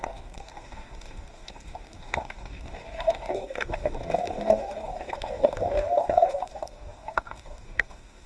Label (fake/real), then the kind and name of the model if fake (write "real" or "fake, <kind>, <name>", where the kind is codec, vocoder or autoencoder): fake, codec, DAC